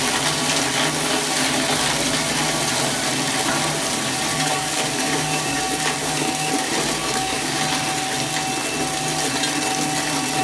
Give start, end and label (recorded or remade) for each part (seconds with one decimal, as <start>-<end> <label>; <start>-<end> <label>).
0.0-4.3 recorded; 4.3-5.6 remade; 5.6-6.0 recorded; 6.0-6.5 remade; 6.5-7.0 recorded; 7.0-7.6 remade; 7.6-10.4 recorded